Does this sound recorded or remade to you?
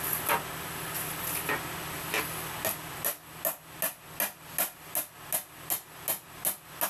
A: recorded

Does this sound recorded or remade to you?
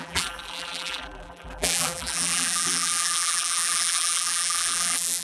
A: remade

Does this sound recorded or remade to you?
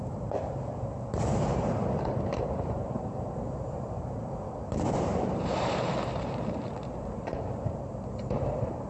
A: remade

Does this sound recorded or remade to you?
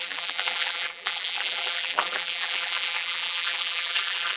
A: remade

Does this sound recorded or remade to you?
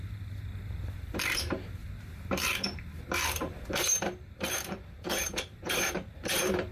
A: remade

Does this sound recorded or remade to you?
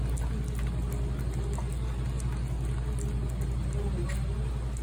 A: recorded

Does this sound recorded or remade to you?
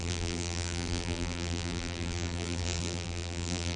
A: remade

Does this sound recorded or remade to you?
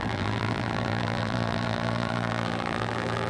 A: remade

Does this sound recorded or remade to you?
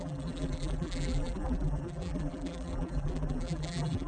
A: remade